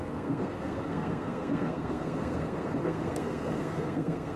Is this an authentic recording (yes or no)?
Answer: no